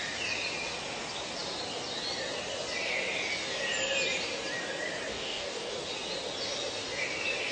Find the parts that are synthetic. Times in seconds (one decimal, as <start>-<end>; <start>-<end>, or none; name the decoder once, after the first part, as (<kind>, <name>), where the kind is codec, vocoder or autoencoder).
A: 5.1-5.7 (codec, DAC)